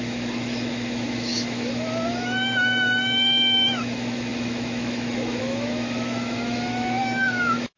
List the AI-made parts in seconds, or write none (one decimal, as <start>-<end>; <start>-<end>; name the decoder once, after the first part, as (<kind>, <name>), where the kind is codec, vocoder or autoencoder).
0.0-7.8 (autoencoder, DAC-VAE)